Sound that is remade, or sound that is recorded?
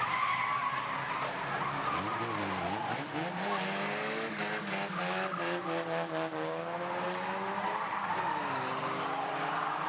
recorded